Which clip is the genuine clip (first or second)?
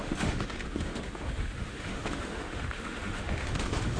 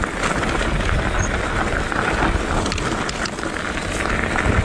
second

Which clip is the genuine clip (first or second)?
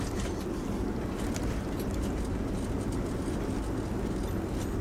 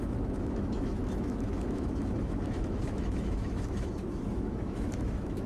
first